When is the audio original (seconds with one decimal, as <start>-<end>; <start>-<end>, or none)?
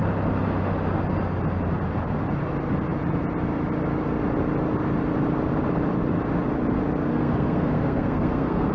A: 0.0-7.1